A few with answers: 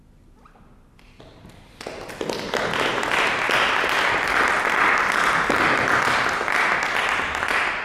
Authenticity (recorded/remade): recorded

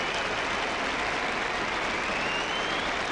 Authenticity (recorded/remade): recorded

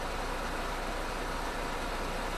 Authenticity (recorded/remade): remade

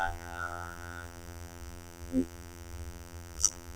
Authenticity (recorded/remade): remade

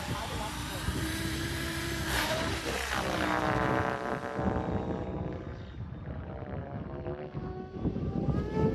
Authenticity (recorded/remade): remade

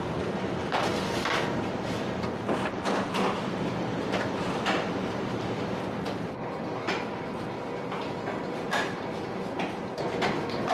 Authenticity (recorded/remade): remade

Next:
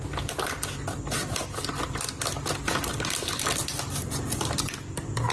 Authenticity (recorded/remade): recorded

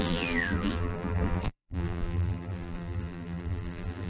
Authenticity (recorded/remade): remade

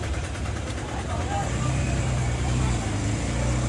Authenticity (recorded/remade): remade